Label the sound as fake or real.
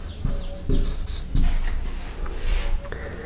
real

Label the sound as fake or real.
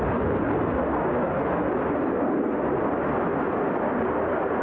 real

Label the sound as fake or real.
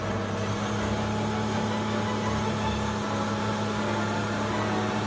real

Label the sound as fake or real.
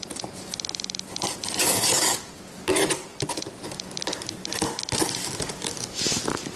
real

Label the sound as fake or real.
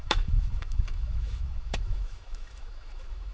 fake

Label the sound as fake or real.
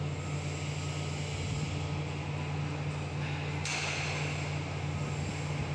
real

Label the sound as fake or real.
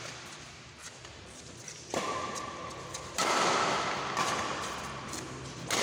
real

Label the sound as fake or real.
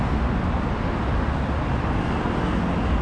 real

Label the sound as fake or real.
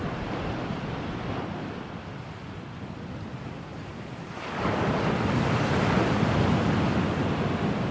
real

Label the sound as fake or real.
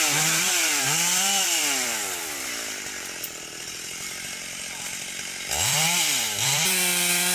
fake